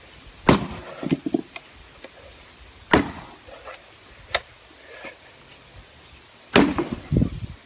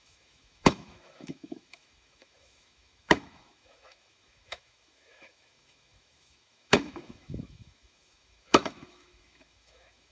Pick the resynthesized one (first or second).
second